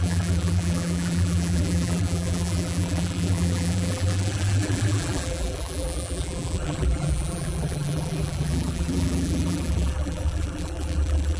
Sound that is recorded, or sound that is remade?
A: remade